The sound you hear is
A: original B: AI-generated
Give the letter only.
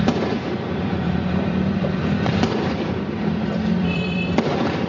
B